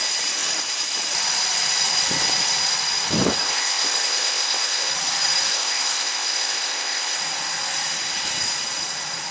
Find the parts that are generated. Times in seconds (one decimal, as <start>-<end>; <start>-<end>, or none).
3.4-4.9; 5.5-7.2